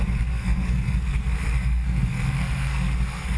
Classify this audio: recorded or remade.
remade